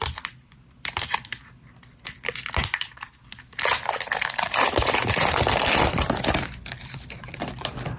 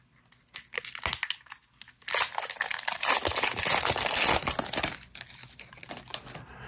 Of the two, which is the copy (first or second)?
first